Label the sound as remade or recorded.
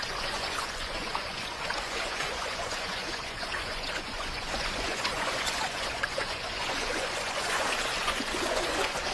remade